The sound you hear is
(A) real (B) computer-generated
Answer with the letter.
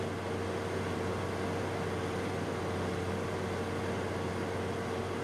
A